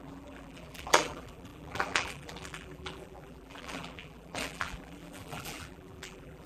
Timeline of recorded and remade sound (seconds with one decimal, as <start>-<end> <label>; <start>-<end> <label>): 0.0-6.5 remade